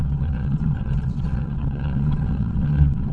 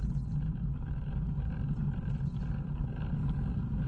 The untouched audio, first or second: second